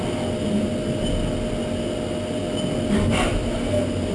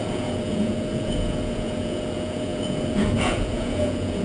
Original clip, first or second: first